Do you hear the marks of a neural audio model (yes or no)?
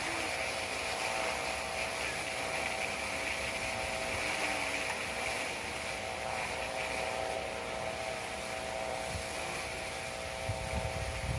no